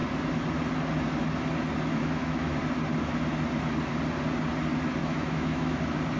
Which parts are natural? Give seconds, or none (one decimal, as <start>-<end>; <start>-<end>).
0.0-1.9; 2.6-5.0; 5.8-6.2